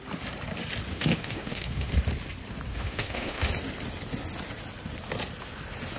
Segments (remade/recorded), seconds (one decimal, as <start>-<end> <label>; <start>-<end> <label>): 0.0-0.9 recorded; 0.9-1.9 remade; 1.9-2.7 recorded; 2.7-3.5 remade; 3.5-6.0 recorded